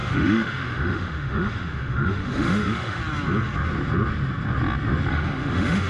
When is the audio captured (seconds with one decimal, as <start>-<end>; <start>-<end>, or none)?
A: 3.0-5.1